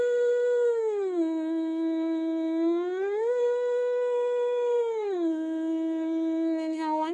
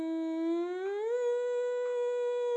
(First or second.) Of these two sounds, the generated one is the first